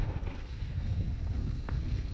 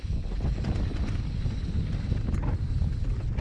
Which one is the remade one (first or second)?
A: first